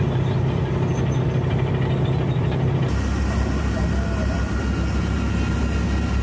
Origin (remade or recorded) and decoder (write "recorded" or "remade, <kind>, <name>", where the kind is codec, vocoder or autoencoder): recorded